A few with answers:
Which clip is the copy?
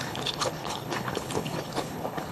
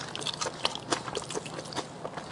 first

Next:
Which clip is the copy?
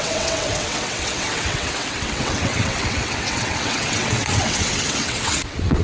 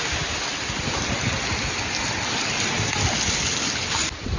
first